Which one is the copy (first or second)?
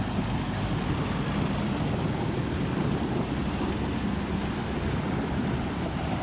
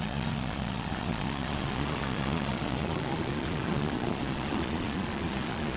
second